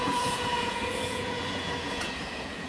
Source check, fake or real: fake